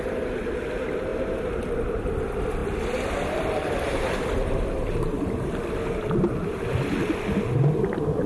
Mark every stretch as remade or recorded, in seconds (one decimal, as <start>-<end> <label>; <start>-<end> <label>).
0.0-1.1 recorded; 1.1-2.2 remade; 2.2-2.6 recorded; 2.6-7.4 remade; 7.4-8.3 recorded